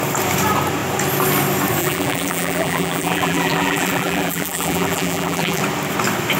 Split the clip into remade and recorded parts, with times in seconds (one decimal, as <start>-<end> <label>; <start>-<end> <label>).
0.0-1.8 recorded; 1.8-5.6 remade; 5.6-6.4 recorded